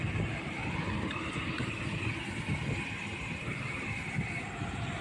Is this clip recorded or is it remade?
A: remade